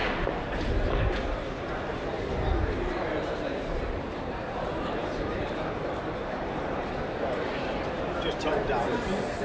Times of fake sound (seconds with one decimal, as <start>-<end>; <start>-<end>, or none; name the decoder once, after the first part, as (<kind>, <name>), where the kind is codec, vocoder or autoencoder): 0.0-9.4 (vocoder, BigVGAN v2)